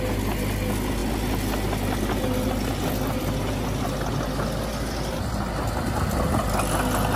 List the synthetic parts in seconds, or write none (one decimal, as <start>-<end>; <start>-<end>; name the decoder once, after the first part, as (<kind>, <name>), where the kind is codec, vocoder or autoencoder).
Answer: none